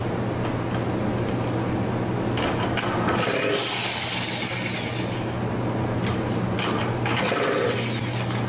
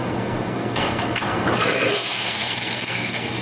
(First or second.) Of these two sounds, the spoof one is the second